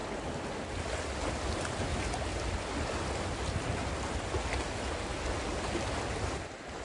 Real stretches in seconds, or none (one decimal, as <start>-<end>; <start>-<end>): 0.0-6.8